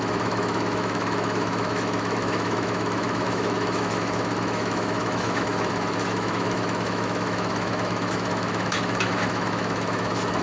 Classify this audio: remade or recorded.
remade